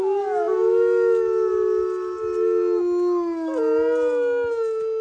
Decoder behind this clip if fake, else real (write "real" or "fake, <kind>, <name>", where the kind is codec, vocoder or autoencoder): real